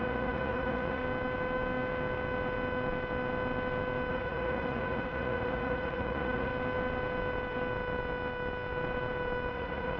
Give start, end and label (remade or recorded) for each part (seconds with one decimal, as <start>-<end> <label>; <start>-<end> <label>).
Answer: 0.0-1.0 remade; 1.0-4.1 recorded; 4.1-6.5 remade; 6.5-9.5 recorded; 9.5-10.0 remade